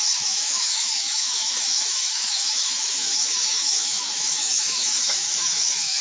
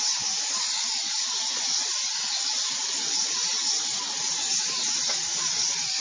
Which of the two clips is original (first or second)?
second